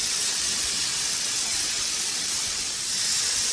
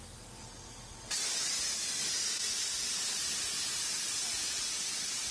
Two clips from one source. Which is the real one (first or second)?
second